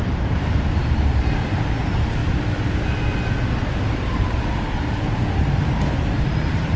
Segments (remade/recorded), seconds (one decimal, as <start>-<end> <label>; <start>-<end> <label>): 0.0-2.2 remade; 2.2-3.8 recorded; 3.8-6.8 remade